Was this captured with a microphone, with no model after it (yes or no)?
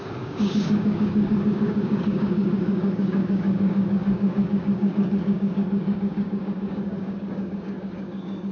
no